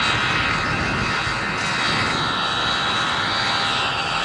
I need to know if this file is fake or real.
real